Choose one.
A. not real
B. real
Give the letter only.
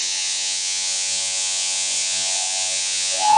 A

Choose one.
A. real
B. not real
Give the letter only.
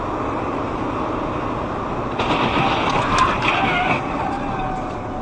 A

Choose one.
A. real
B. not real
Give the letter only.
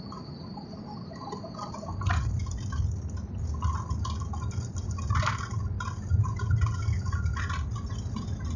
A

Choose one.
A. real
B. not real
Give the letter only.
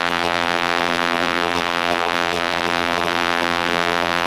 B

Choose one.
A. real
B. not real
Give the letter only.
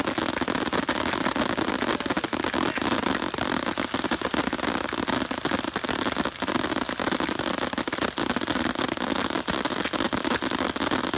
A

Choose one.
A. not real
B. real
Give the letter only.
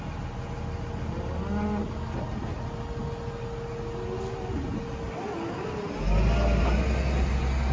B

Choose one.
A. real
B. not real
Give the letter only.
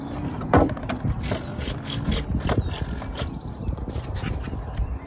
A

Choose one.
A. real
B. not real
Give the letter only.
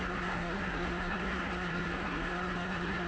B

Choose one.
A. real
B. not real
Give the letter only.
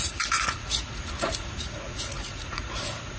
B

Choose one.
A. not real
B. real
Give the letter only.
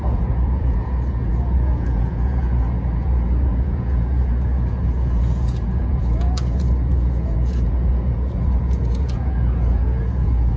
A